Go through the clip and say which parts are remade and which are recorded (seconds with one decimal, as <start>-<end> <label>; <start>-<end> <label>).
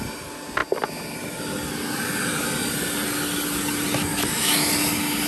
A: 0.0-4.1 recorded; 4.1-4.7 remade; 4.7-5.3 recorded